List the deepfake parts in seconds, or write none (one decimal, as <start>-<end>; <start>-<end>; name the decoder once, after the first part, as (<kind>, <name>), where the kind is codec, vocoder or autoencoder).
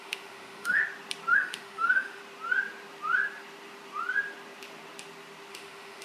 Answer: 0.0-0.8 (autoencoder, DAC-VAE); 1.3-2.2; 5.5-6.0